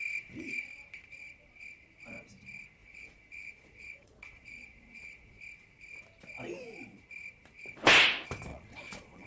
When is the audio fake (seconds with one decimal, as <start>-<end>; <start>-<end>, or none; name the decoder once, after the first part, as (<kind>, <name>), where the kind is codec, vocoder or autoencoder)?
2.8-5.4 (vocoder, Vocos); 8.5-9.3